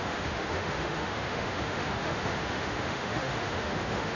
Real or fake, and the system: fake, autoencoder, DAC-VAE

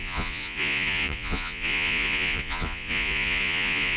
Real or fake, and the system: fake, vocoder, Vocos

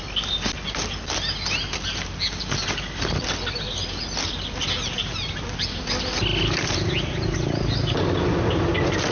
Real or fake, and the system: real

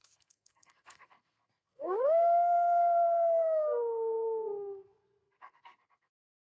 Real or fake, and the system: fake, codec, SNAC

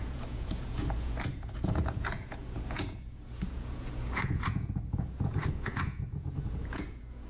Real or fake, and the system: fake, vocoder, Vocos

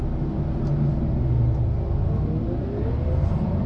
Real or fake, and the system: real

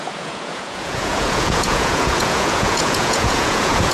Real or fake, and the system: fake, vocoder, Vocos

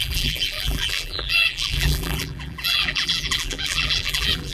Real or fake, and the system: fake, vocoder, BigVGAN v2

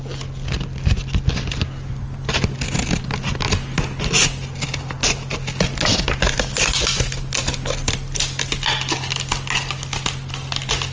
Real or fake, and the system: real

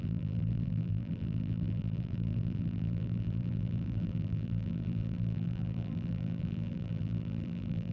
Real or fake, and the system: fake, vocoder, BigVGAN v2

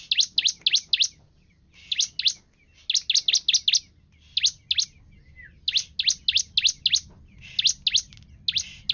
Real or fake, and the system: real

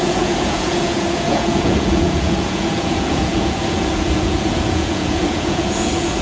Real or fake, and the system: fake, vocoder, Vocos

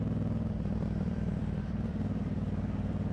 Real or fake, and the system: fake, vocoder, BigVGAN v2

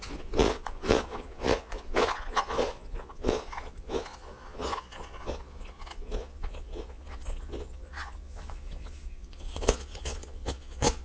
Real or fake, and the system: fake, vocoder, Vocos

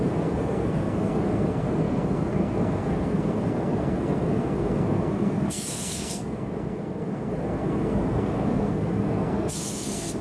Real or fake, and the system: fake, codec, SNAC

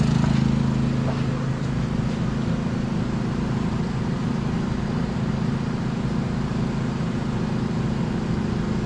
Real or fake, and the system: real